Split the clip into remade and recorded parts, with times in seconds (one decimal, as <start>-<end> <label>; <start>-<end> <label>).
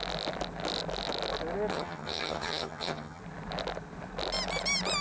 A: 0.0-1.7 recorded; 1.7-3.2 remade; 3.2-5.0 recorded